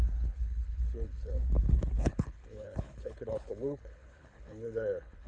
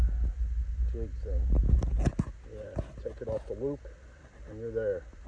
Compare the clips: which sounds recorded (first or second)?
second